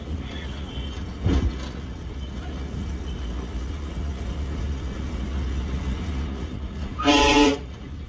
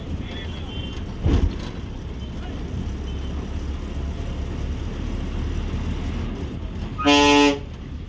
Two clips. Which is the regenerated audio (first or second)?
first